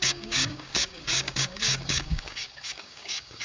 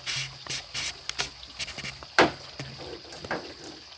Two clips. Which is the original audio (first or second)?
second